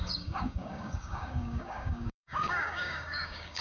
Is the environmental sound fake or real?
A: fake